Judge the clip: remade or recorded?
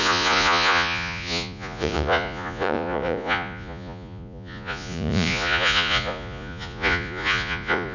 remade